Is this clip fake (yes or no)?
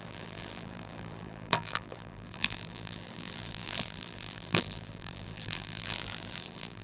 yes